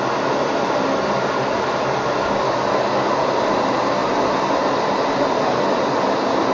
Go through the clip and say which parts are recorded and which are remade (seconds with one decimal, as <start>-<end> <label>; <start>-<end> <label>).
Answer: 0.0-6.5 recorded